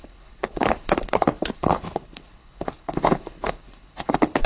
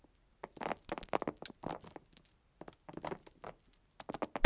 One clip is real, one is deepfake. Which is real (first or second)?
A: second